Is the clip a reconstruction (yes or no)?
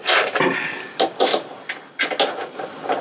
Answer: no